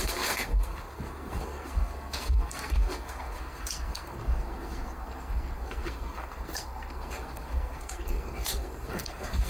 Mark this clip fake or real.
fake